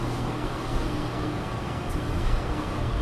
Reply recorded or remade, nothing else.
remade